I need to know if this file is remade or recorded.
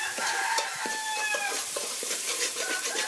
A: remade